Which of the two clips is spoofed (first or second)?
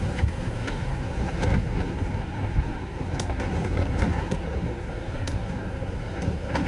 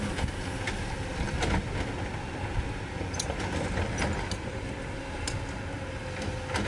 first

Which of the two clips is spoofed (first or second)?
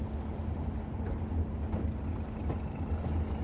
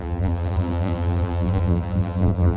second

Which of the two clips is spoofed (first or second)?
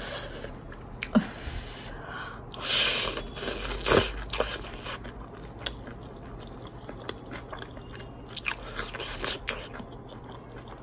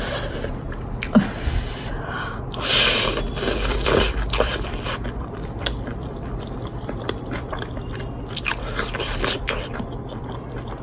second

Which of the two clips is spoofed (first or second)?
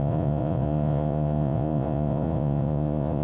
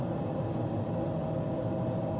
first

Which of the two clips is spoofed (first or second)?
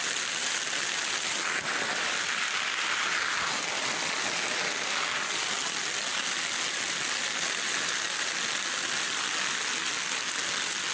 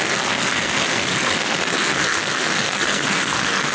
second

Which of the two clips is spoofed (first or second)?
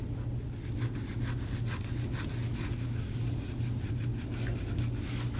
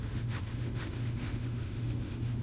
second